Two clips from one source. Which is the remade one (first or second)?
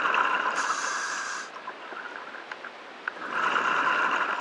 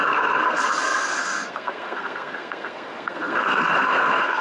second